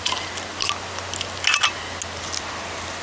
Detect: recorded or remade recorded